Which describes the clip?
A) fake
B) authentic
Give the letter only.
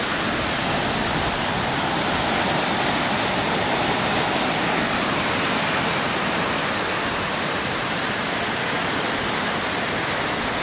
B